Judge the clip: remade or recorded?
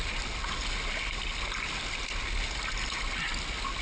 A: recorded